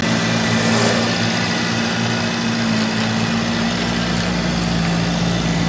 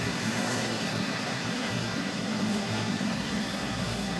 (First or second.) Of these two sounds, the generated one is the second